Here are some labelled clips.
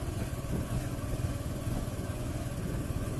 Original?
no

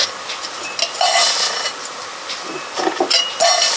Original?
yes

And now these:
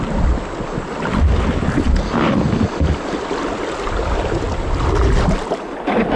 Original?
yes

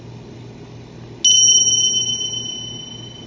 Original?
yes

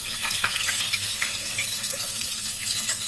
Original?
no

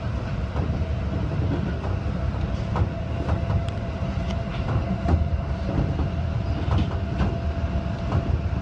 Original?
yes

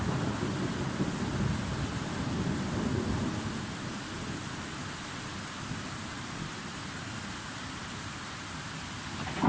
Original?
yes